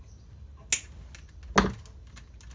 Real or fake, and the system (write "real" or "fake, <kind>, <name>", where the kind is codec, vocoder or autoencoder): real